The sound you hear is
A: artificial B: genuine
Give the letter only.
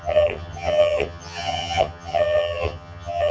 A